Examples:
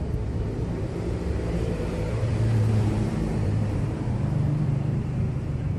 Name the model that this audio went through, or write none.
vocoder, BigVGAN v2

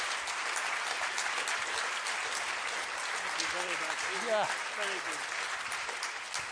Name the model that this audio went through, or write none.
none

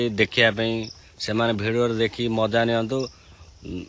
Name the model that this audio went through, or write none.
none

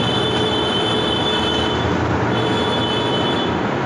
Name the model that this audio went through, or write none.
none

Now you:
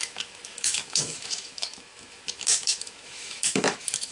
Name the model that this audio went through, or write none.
autoencoder, DAC-VAE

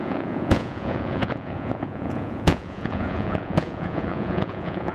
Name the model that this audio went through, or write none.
vocoder, Vocos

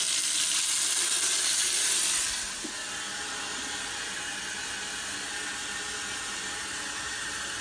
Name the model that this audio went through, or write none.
none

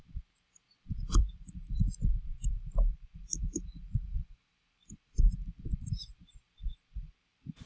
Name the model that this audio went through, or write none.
vocoder, BigVGAN v2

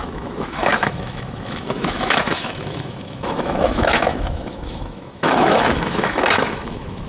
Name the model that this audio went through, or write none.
autoencoder, DAC-VAE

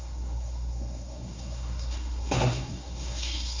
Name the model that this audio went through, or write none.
codec, SNAC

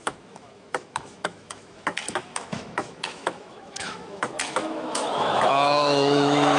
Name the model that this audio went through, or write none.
autoencoder, DAC-VAE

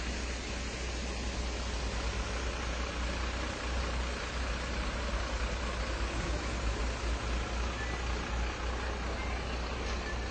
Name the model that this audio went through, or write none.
none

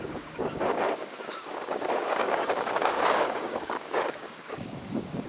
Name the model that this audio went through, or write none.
codec, DAC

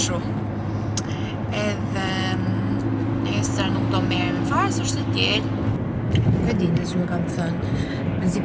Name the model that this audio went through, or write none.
none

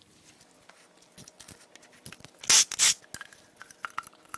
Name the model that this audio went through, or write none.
none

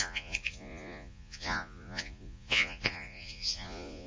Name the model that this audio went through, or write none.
vocoder, Vocos